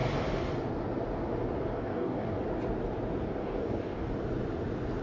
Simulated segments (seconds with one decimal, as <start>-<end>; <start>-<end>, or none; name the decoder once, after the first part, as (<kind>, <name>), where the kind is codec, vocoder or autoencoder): 1.8-2.4 (codec, DAC); 3.4-4.1